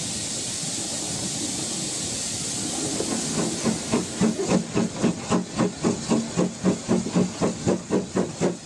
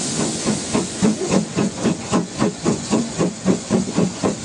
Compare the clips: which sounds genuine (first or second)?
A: first